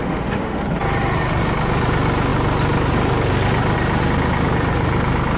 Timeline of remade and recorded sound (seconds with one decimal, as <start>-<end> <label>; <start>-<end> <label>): 0.0-0.6 remade; 0.6-5.4 recorded